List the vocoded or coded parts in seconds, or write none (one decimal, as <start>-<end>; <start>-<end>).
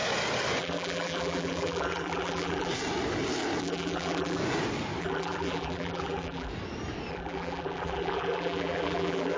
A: 0.6-2.7; 3.6-4.4; 5.0-6.5; 7.1-9.4